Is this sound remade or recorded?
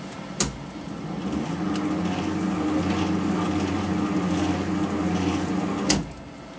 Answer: recorded